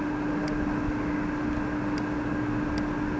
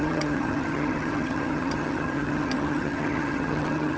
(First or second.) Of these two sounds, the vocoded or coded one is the second